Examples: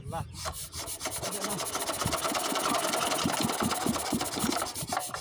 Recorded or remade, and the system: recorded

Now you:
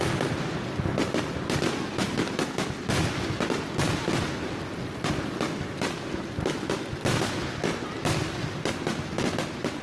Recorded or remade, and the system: recorded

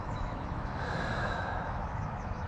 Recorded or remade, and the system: remade, autoencoder, DAC-VAE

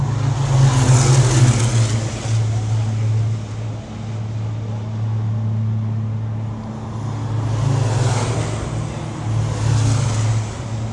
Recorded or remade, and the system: recorded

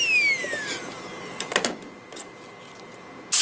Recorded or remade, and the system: recorded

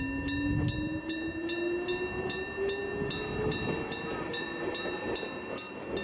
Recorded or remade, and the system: recorded